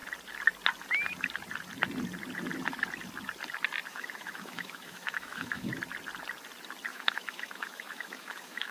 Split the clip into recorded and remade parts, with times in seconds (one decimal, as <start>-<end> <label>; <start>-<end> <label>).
0.0-3.9 recorded; 3.9-5.7 remade; 5.7-6.9 recorded; 6.9-8.7 remade